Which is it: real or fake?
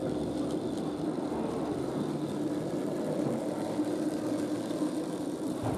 real